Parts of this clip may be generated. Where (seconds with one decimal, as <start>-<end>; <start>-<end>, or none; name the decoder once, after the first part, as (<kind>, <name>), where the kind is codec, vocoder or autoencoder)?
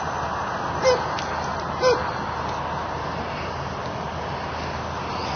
none